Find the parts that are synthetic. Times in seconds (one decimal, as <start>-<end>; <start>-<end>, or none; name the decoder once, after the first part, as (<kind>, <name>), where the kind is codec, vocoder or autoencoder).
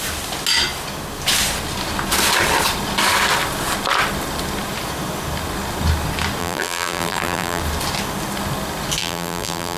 6.4-7.6 (vocoder, BigVGAN v2); 9.0-9.8